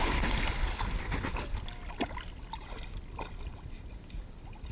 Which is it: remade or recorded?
recorded